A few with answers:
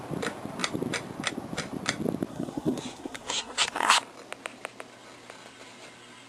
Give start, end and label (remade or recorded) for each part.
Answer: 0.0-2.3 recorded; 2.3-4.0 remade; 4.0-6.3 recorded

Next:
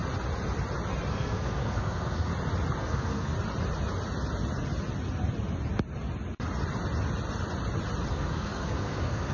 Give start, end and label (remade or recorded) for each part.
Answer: 0.0-1.1 recorded; 1.1-2.3 remade; 2.3-2.8 recorded; 2.8-3.3 remade; 3.3-8.1 recorded; 8.1-9.3 remade